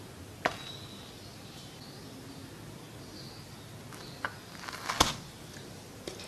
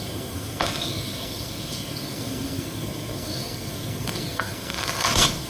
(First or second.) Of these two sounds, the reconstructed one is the second